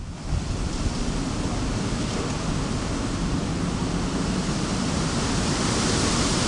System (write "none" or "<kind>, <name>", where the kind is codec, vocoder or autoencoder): none